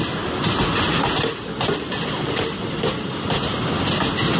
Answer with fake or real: real